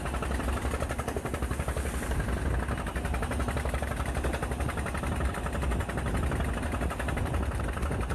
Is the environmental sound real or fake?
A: real